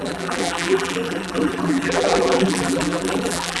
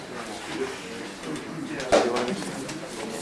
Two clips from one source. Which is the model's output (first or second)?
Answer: first